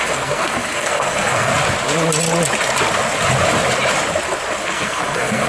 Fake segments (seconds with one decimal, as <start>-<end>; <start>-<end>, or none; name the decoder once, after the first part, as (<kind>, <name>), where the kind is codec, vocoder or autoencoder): 0.0-1.5 (codec, SNAC); 4.6-5.5